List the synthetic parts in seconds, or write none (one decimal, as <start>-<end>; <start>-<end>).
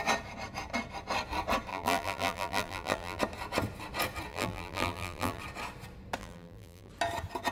1.7-3.2; 4.3-5.4; 6.2-6.9